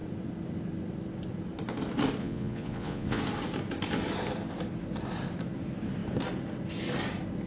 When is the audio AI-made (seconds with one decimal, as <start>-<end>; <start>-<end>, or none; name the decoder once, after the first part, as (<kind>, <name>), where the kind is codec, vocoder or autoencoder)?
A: 2.2-3.2 (vocoder, Vocos)